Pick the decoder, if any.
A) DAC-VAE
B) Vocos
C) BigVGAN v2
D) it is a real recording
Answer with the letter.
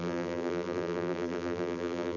C